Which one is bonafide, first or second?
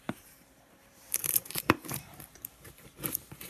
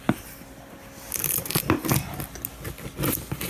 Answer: second